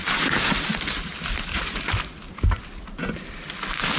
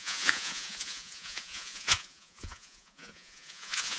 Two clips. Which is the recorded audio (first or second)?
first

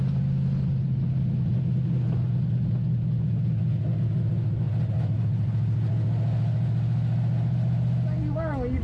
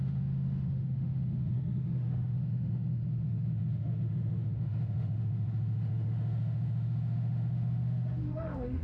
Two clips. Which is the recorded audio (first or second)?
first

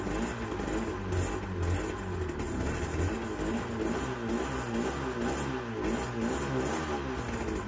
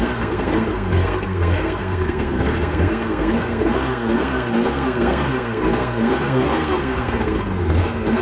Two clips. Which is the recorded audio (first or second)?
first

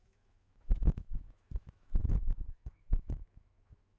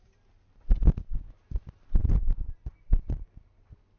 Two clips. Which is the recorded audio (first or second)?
second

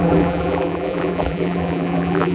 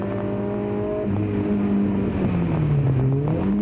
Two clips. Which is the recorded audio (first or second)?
second